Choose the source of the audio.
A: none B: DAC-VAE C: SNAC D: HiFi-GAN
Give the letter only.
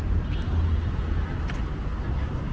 A